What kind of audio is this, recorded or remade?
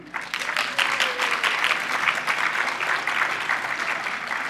recorded